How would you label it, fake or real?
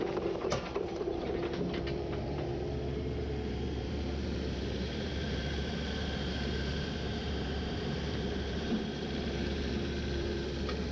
fake